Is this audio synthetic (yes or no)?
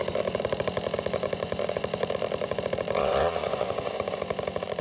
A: yes